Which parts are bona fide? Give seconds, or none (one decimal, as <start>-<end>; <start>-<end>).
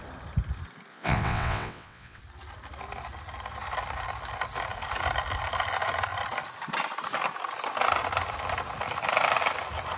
0.0-0.9; 2.2-10.0